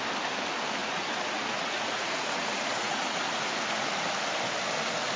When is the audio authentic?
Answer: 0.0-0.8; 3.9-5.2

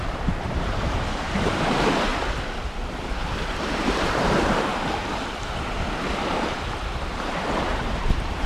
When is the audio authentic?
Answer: 2.1-2.9; 4.7-7.1

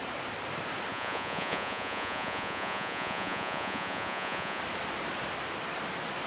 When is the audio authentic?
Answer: 0.0-0.9; 4.6-6.3

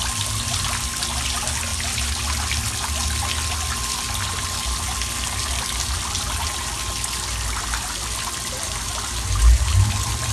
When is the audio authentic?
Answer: 0.0-10.3

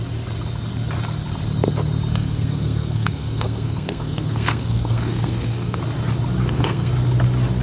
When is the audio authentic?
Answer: 0.0-2.1; 5.8-6.4; 6.9-7.6